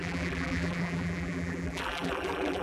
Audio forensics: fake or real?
fake